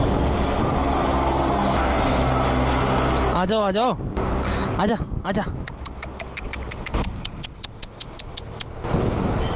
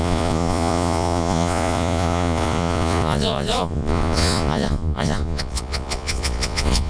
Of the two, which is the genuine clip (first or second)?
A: first